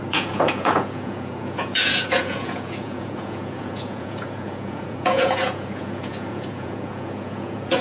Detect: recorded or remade remade